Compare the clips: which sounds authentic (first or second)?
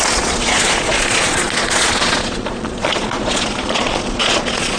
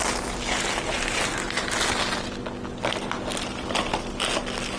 second